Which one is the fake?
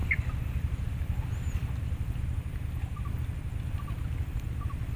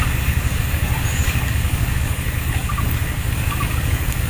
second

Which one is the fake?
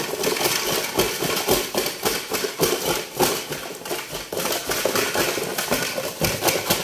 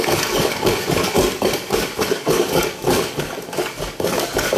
second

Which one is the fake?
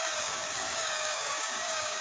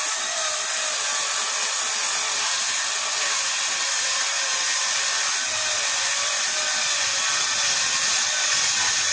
first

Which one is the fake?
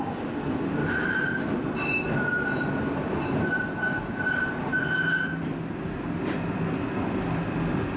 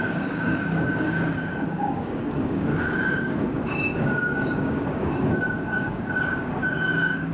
second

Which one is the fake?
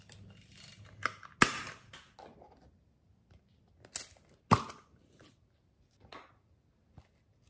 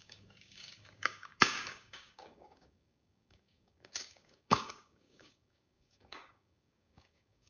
second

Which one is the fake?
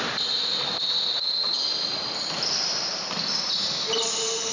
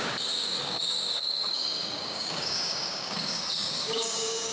second